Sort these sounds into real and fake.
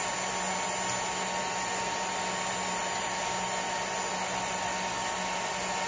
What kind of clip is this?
real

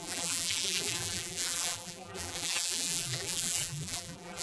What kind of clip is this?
fake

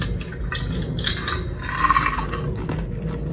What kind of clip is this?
real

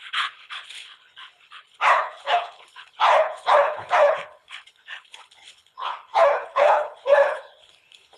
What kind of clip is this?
fake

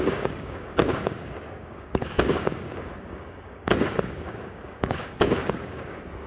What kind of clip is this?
fake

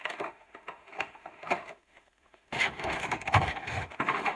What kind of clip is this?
fake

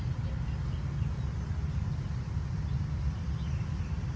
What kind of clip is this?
real